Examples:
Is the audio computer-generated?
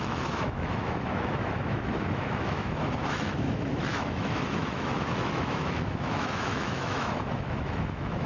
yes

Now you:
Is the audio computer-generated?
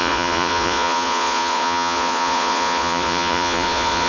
yes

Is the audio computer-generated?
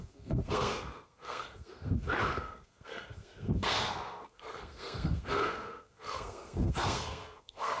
yes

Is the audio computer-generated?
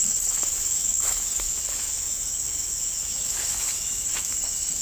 yes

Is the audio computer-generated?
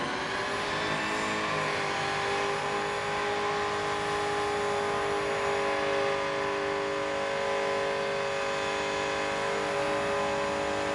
no